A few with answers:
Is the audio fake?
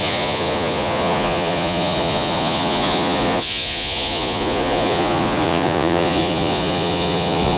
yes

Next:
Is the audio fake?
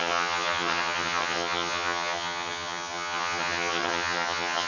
yes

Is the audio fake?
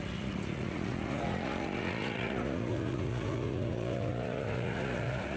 yes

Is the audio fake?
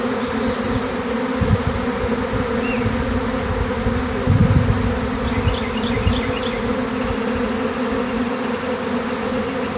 no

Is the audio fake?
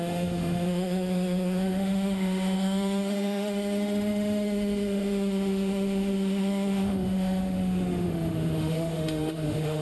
yes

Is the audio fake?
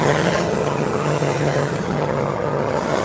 yes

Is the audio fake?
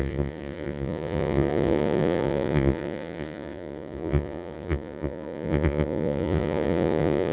yes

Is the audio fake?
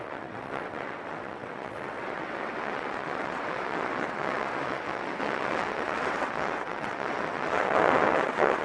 yes